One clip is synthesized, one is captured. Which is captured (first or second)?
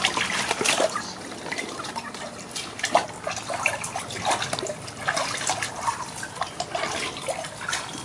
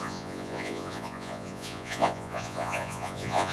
first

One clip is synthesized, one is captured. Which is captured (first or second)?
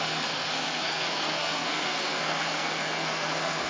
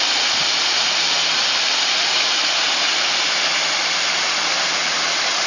second